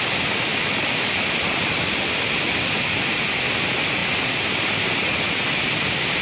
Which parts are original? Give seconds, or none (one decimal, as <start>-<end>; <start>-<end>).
0.0-6.2